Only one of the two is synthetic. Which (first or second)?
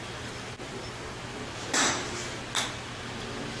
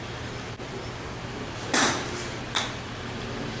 second